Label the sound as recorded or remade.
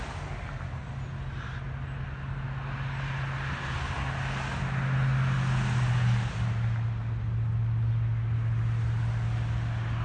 recorded